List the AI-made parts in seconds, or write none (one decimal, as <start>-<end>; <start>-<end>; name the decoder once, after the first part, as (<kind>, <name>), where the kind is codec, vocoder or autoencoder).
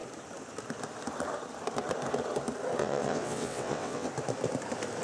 2.8-4.1 (vocoder, WaveNeXt)